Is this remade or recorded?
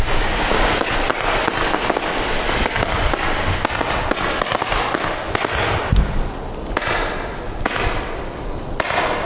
recorded